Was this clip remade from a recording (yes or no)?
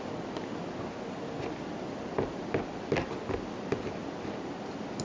no